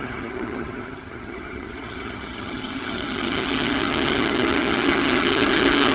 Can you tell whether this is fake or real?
fake